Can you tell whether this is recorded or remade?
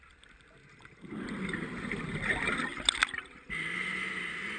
recorded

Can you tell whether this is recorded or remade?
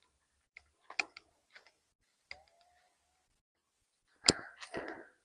recorded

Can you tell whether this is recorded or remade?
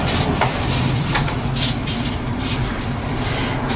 remade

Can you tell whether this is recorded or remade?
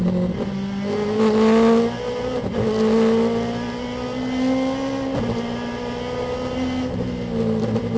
recorded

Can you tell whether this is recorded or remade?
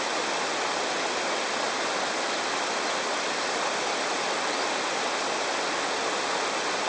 recorded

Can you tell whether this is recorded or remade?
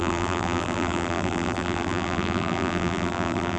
remade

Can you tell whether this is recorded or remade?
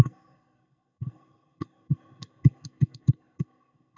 remade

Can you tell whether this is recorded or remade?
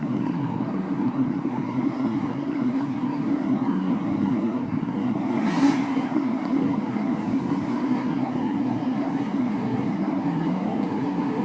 remade